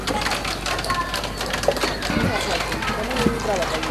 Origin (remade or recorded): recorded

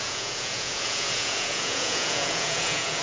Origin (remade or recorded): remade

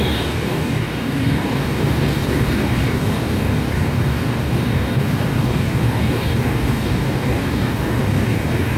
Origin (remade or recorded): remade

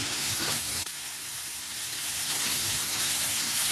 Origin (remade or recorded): remade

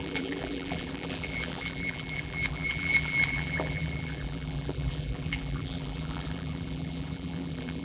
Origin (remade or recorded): remade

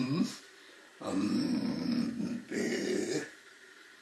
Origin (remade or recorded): remade